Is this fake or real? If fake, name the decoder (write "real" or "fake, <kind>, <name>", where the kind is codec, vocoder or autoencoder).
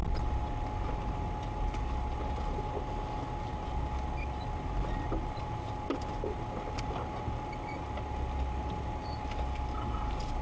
real